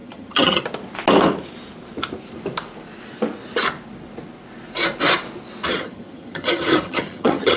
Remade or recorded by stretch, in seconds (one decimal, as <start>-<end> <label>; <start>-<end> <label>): 0.0-0.6 remade; 0.6-5.7 recorded; 5.7-7.6 remade